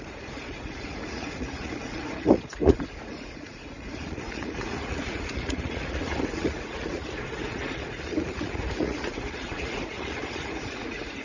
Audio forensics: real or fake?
fake